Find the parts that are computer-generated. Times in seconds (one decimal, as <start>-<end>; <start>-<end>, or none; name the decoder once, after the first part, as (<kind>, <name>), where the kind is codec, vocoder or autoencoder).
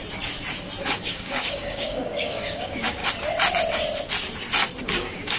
0.9-3.0 (codec, DAC); 4.8-5.4